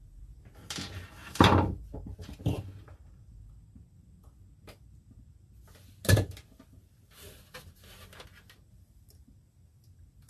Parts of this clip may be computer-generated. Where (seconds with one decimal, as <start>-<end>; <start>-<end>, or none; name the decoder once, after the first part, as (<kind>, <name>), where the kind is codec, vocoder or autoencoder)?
1.2-3.5 (vocoder, BigVGAN v2)